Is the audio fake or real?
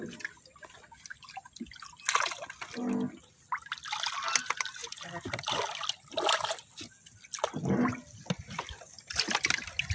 real